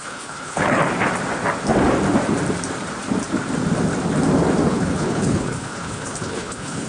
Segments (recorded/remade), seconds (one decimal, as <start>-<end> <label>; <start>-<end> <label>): 0.0-0.8 remade; 0.8-4.7 recorded; 4.7-6.9 remade